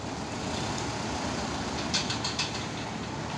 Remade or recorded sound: recorded